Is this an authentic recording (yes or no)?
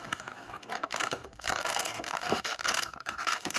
no